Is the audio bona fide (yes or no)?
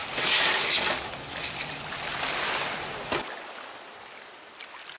yes